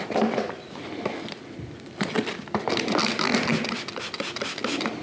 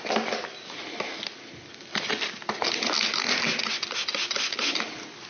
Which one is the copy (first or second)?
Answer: first